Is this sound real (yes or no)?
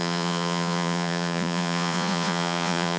no